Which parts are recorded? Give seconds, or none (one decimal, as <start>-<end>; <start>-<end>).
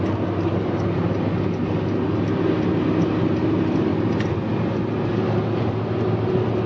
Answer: 0.0-6.7